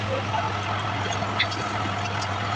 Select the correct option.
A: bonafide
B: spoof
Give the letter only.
A